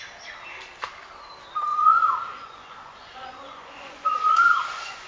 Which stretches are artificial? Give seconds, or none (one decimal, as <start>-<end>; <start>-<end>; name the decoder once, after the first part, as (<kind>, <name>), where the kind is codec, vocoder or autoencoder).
1.7-5.1 (vocoder, Vocos)